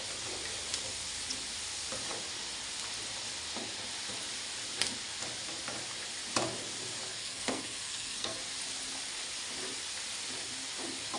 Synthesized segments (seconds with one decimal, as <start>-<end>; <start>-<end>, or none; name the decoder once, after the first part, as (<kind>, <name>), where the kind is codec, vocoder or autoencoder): 7.1-8.4 (codec, SNAC)